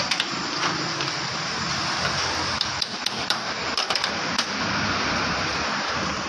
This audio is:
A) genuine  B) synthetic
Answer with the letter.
B